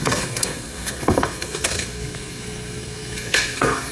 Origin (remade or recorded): remade